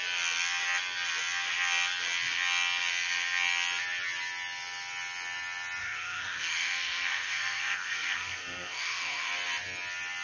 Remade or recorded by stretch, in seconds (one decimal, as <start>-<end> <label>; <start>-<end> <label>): 0.0-5.8 recorded; 5.8-9.3 remade; 9.3-10.2 recorded